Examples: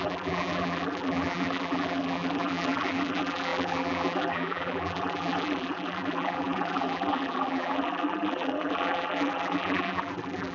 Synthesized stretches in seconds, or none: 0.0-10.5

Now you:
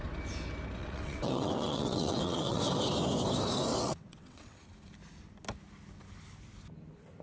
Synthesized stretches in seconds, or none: 0.8-2.6; 3.7-4.6

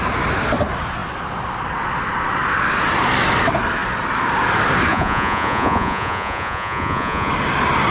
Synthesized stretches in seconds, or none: 4.9-7.3

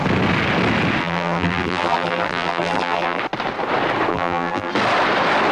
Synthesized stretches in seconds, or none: 1.0-3.2; 4.1-4.7

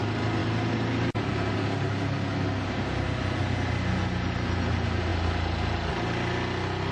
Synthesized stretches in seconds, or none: none

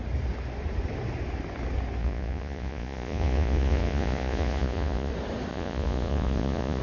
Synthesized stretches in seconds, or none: 2.0-5.1; 5.5-6.8